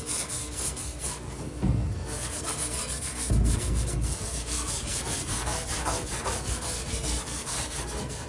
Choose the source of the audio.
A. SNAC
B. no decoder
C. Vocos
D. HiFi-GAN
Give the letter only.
A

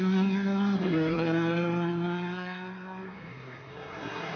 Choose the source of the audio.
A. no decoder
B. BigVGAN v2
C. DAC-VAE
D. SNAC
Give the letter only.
D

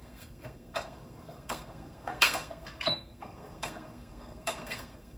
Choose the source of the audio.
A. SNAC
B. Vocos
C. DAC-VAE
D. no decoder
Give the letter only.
A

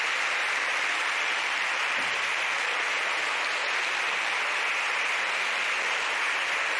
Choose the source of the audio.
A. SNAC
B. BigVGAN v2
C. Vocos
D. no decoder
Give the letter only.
D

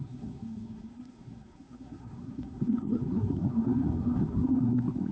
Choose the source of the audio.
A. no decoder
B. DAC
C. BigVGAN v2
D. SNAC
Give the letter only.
D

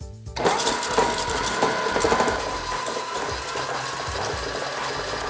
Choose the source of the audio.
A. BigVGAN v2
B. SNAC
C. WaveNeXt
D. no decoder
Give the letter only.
D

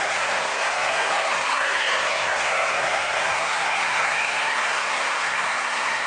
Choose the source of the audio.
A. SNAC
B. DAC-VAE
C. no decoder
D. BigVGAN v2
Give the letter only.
A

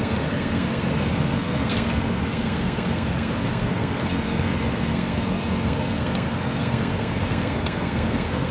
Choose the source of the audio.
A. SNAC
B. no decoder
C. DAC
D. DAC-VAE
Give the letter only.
A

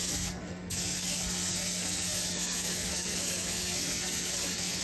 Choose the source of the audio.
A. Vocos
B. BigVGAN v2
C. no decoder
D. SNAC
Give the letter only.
D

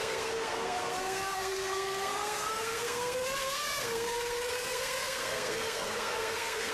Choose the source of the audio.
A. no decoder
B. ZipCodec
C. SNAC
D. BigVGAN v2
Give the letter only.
C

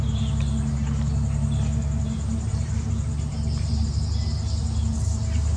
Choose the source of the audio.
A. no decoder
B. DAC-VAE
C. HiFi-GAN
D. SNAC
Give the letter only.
A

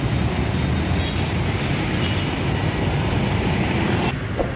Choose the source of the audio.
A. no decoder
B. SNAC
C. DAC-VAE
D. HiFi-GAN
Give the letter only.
A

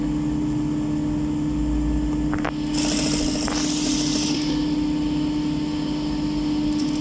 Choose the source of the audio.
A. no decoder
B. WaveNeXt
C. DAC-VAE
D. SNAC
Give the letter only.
A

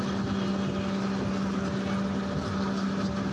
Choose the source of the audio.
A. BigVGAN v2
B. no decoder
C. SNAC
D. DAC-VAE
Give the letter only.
B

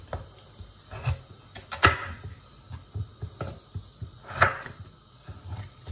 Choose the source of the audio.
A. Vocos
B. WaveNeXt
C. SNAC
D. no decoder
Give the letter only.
D